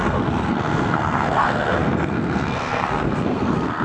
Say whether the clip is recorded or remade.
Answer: remade